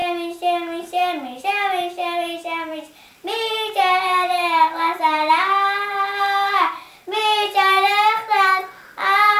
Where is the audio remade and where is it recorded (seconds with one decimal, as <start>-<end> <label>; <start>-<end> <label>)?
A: 0.0-2.7 recorded; 2.7-7.9 remade; 7.9-9.4 recorded